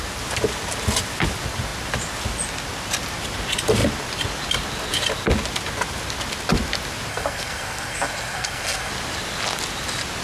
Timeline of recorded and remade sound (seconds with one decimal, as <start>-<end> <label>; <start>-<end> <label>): 0.0-7.1 recorded; 7.1-8.9 remade; 8.9-10.2 recorded